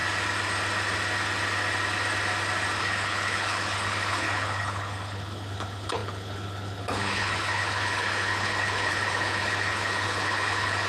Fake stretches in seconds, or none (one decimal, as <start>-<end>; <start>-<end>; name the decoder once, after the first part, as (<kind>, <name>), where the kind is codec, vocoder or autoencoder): 2.8-10.9 (codec, HILCodec)